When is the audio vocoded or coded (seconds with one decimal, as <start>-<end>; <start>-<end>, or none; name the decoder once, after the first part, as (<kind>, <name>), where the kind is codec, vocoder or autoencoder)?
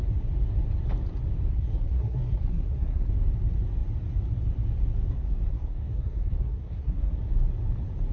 1.5-3.1 (codec, SNAC); 5.5-7.1